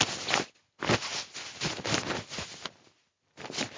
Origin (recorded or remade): recorded